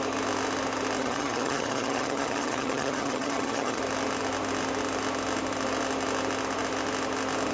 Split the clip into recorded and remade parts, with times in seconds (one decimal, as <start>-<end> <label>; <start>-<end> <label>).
0.0-1.0 recorded; 1.0-3.8 remade; 3.8-7.5 recorded